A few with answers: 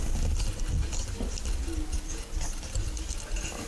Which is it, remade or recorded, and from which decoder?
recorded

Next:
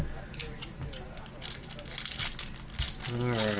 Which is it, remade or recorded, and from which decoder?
recorded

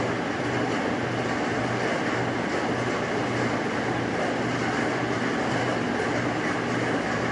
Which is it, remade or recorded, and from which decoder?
recorded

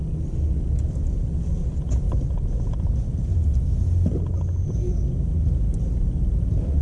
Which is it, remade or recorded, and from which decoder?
recorded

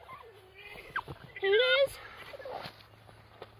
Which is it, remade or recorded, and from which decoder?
recorded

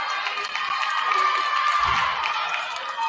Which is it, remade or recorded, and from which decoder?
recorded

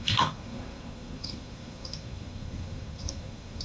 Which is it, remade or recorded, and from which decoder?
remade, codec, SNAC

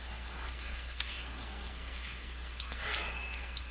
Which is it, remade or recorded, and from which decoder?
remade, codec, SNAC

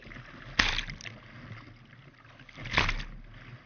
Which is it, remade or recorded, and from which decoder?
recorded